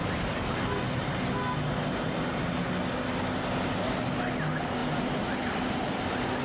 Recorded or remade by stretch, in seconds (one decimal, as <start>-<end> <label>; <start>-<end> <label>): 0.0-6.4 recorded